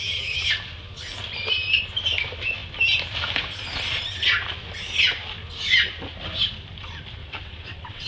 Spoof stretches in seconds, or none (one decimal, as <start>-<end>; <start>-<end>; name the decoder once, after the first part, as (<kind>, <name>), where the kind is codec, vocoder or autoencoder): 7.2-8.1 (vocoder, WaveNeXt)